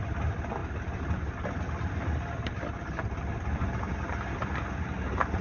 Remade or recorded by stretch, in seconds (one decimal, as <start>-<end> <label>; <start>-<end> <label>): 0.0-5.4 recorded